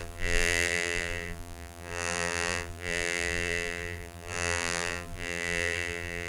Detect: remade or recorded remade